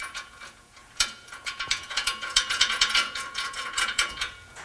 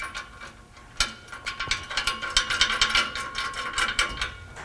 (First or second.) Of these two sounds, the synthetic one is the first